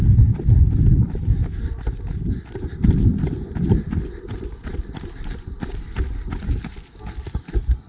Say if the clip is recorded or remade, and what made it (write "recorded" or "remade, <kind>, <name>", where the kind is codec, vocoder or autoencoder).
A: recorded